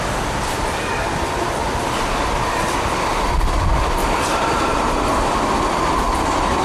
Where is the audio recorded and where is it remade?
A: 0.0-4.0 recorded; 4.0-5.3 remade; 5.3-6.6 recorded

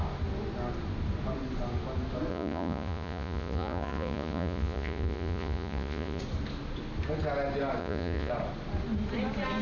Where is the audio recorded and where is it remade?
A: 0.0-2.3 recorded; 2.3-6.2 remade; 6.2-7.8 recorded; 7.8-8.3 remade; 8.3-9.6 recorded

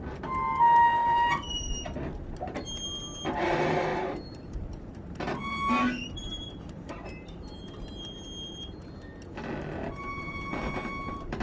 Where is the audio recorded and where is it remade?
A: 0.0-1.0 recorded; 1.0-1.5 remade; 1.5-3.9 recorded; 3.9-8.0 remade; 8.0-9.8 recorded; 9.8-11.4 remade

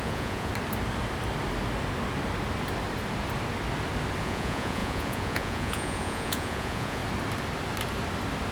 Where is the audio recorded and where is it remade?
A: 0.0-0.5 remade; 0.5-4.2 recorded; 4.2-7.0 remade; 7.0-8.5 recorded

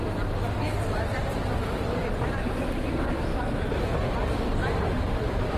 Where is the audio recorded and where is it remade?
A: 0.0-0.7 recorded; 0.7-2.5 remade; 2.5-3.3 recorded; 3.3-5.6 remade